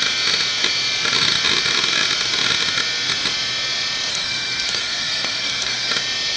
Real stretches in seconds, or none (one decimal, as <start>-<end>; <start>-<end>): 0.0-4.1; 5.9-6.4